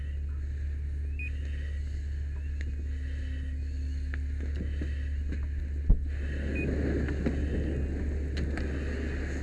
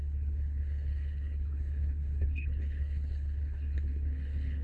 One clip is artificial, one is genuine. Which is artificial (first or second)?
second